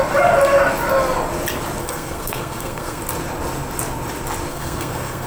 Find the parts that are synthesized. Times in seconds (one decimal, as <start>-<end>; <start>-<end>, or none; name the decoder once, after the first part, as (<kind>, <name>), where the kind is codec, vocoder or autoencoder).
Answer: 1.8-3.0 (codec, SNAC); 4.5-5.3